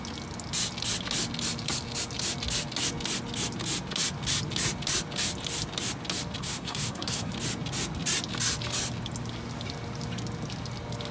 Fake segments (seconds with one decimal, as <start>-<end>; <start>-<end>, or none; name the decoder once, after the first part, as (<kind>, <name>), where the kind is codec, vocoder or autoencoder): 6.4-7.3 (codec, SNAC)